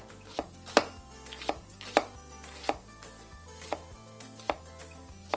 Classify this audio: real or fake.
real